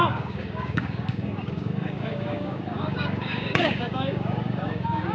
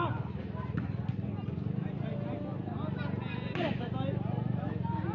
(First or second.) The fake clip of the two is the first